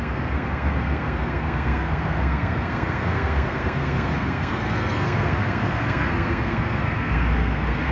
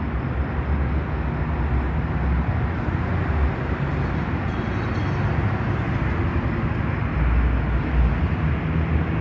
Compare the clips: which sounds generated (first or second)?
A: first